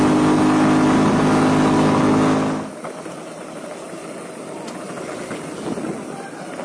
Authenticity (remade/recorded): recorded